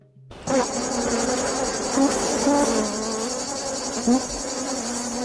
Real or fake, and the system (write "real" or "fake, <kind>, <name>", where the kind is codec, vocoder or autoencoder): real